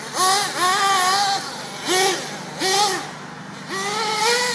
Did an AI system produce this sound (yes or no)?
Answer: no